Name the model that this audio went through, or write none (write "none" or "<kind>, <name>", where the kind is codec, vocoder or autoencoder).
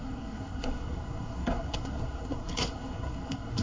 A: codec, SNAC